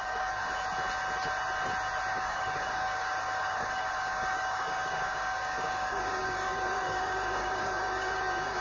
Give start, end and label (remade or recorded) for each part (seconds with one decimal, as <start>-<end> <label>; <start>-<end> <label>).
0.0-0.5 remade; 0.5-2.1 recorded; 2.1-8.6 remade